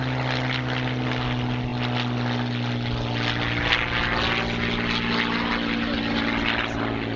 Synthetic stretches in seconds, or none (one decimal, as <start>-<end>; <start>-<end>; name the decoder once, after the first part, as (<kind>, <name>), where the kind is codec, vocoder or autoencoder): none